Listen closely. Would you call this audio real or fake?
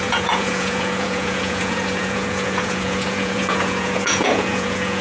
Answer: fake